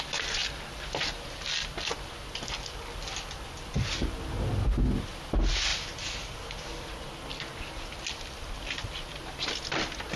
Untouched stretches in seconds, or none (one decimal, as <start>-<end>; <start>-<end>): 0.0-10.2